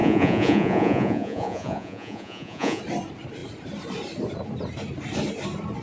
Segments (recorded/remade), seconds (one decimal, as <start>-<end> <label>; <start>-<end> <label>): 0.0-2.8 remade; 2.8-5.8 recorded